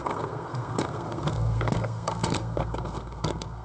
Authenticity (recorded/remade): remade